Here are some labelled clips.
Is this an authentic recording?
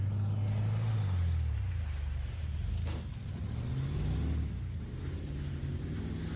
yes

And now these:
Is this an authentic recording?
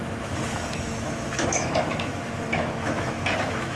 no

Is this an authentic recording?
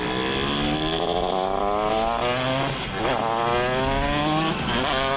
yes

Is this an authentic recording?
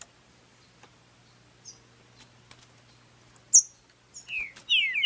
yes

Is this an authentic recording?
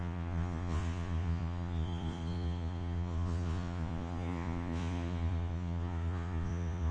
no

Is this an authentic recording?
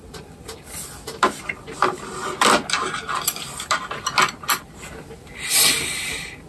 yes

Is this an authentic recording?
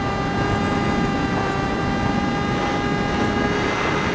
yes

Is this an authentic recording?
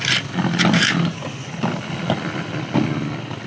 yes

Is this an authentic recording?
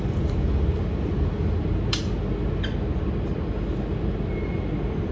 yes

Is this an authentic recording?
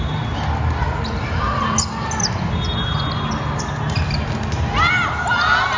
yes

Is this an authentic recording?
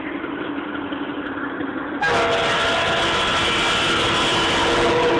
yes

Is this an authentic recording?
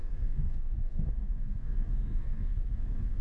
no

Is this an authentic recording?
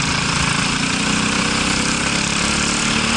yes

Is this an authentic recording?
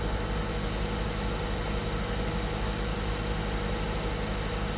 yes